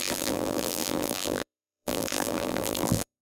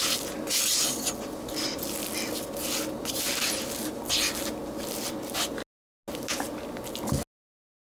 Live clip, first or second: second